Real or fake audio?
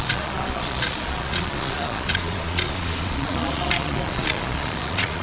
fake